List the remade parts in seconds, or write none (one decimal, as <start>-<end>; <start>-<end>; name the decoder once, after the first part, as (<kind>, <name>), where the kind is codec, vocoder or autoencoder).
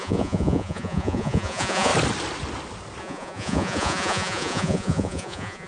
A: 0.0-1.9 (vocoder, Vocos); 3.0-5.7